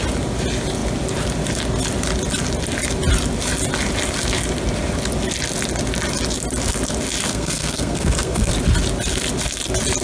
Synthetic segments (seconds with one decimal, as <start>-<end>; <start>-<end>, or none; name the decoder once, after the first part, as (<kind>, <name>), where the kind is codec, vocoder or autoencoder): 7.3-8.5 (codec, SNAC)